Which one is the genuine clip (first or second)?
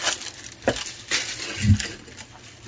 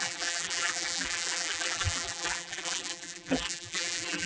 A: first